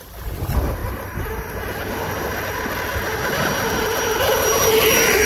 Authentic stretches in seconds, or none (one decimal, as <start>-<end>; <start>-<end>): 0.0-5.3